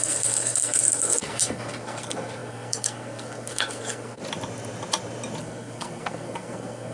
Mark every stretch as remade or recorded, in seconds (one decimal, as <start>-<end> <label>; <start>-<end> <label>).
0.0-4.2 remade; 4.2-5.4 recorded; 5.4-6.9 remade